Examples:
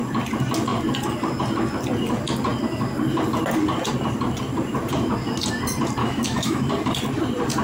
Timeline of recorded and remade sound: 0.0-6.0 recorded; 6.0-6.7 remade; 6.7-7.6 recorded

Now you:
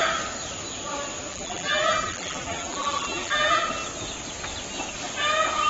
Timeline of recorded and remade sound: 0.0-1.3 recorded; 1.3-3.6 remade; 3.6-5.7 recorded

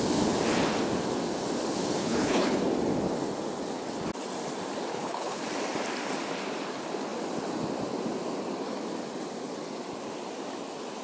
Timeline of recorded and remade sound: 0.0-2.0 recorded; 2.0-2.6 remade; 2.6-4.9 recorded; 4.9-5.4 remade; 5.4-11.0 recorded